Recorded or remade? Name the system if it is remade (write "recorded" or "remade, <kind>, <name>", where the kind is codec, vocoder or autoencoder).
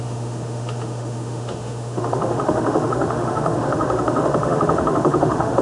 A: remade, autoencoder, DAC-VAE